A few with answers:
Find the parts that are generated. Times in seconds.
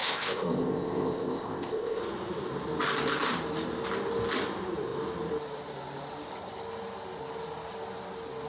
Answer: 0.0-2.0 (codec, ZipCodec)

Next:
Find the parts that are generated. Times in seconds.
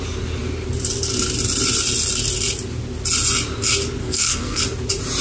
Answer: 4.0-4.6 (codec, SNAC)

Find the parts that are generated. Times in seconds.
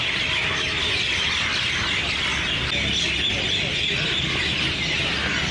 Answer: none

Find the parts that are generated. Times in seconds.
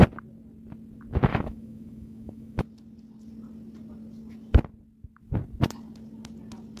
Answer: 1.3-2.6 (autoencoder, DAC-VAE)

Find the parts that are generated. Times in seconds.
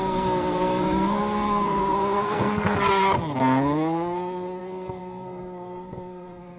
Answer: 0.0-6.6 (codec, SNAC)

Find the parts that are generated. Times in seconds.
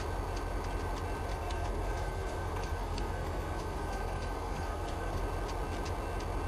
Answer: 1.3-5.2 (codec, SNAC)